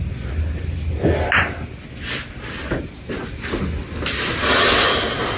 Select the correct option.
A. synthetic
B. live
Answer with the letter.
B